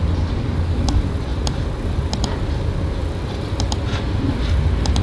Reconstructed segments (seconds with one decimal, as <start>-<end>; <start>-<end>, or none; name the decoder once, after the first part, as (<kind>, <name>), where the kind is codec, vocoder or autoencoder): 0.0-3.0 (vocoder, BigVGAN v2); 4.5-5.0